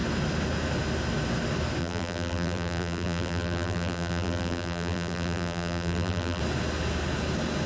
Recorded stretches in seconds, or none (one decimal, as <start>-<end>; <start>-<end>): 0.0-1.8; 6.4-7.7